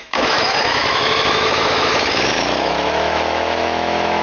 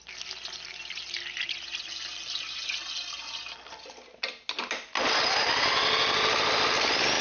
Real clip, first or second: second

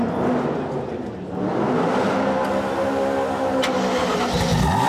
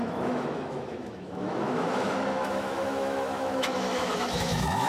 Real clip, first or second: first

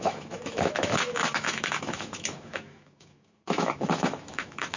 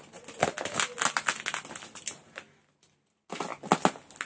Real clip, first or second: second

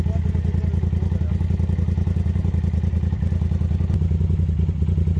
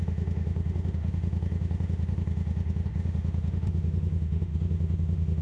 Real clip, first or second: first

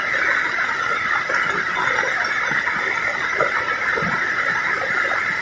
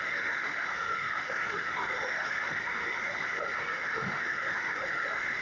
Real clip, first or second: first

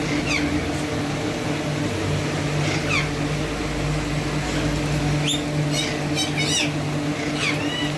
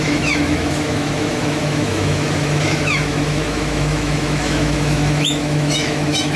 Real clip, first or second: first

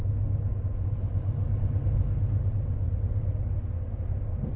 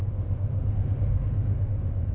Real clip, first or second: first